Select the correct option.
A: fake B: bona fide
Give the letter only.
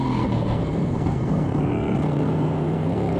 A